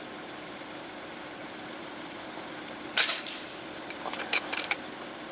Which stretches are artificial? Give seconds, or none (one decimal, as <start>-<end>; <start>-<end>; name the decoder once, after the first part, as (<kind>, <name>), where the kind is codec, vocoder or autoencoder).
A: 1.4-4.6 (vocoder, BigVGAN v2)